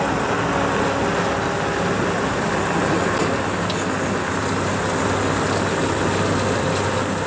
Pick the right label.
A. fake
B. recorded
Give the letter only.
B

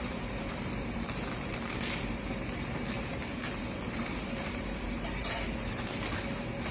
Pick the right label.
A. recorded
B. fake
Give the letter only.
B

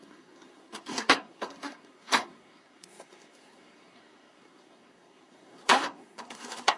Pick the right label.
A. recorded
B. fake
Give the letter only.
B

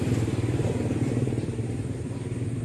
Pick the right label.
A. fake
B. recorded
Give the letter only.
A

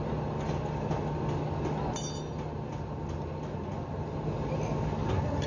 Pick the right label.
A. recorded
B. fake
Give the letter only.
A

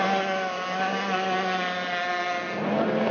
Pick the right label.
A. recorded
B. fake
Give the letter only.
A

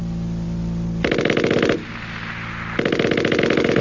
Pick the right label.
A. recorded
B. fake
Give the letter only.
A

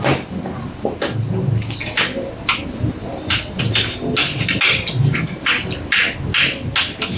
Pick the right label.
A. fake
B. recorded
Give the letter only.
B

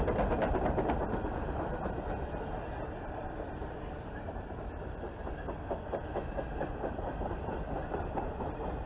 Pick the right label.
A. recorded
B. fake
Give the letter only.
B